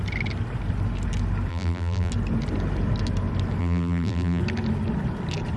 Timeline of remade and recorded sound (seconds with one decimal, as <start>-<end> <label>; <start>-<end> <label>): 0.0-1.5 recorded; 1.5-2.1 remade; 2.1-3.6 recorded; 3.6-4.4 remade; 4.4-5.6 recorded